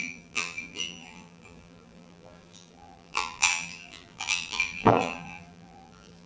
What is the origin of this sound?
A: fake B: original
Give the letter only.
A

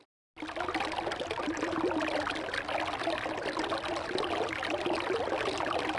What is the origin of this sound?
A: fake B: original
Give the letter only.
B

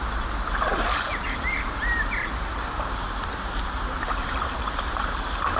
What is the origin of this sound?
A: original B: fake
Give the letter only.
B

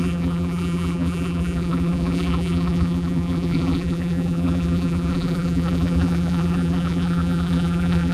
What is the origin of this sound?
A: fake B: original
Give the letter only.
A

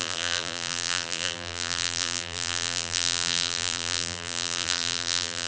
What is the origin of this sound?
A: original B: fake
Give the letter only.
B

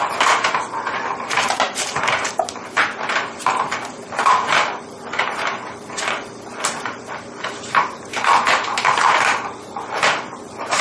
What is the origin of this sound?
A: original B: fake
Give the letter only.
B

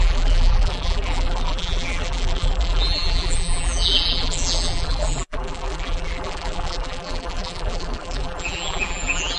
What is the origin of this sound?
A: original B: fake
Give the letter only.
B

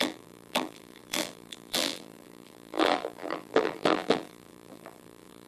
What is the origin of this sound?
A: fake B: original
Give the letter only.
A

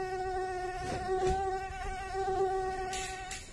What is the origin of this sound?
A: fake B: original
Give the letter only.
B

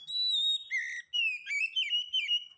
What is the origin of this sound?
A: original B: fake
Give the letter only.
A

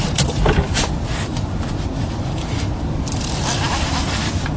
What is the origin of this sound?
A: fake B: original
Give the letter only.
A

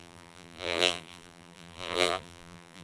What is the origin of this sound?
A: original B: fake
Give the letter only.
B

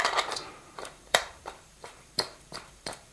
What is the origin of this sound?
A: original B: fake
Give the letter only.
B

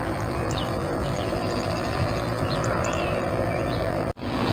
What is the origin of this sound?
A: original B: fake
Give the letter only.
B